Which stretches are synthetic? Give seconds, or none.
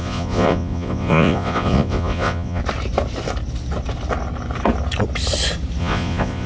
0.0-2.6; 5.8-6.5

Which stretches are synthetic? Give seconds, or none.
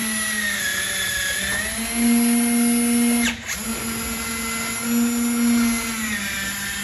none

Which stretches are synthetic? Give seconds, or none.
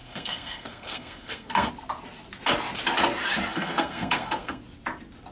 0.0-1.7; 3.5-4.6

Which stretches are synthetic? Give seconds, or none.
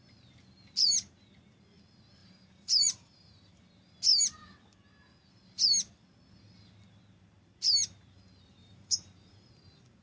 2.2-3.6; 8.6-9.5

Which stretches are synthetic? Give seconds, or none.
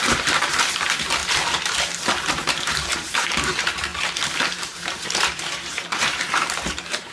0.0-1.2; 2.3-3.9; 4.5-7.1